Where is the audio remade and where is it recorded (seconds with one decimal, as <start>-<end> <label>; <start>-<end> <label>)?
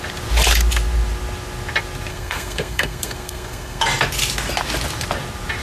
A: 0.0-2.1 recorded; 2.1-3.8 remade; 3.8-5.6 recorded